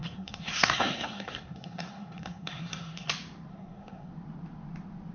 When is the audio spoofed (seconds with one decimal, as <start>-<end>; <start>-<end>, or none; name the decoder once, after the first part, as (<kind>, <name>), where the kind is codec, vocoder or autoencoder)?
0.0-3.1 (codec, SNAC); 3.5-4.1